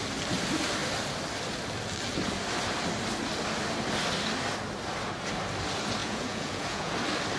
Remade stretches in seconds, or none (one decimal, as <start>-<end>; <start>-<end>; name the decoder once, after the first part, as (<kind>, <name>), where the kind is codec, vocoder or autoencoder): 6.0-6.9 (vocoder, Vocos)